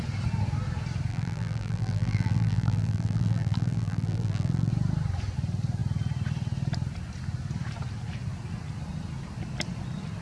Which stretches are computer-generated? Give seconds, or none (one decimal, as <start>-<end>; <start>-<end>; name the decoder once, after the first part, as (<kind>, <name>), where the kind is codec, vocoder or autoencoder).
1.1-4.7 (vocoder, BigVGAN v2)